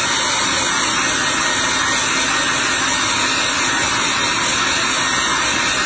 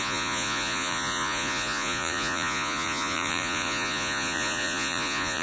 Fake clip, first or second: second